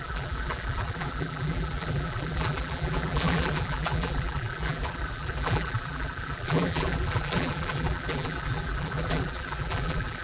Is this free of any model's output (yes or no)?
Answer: no